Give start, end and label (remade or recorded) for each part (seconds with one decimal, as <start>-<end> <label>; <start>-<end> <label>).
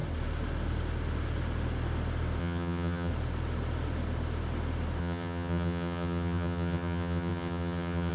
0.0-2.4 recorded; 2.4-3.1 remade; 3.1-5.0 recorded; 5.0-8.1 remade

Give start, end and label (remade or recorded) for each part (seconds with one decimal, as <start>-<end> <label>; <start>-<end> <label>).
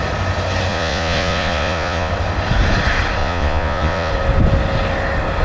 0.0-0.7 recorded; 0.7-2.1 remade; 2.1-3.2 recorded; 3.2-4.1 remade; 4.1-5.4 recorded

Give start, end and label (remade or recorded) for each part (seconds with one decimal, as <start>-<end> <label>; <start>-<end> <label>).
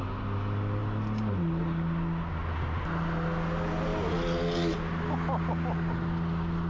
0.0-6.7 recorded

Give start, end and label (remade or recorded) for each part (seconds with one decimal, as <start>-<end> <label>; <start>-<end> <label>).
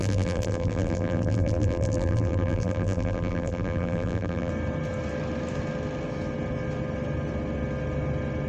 0.0-4.5 remade; 4.5-8.5 recorded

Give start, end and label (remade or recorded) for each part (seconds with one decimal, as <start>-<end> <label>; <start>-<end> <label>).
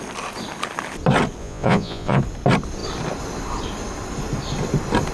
0.0-1.4 recorded; 1.4-2.2 remade; 2.2-5.1 recorded